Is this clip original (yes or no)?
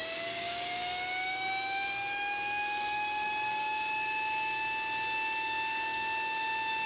no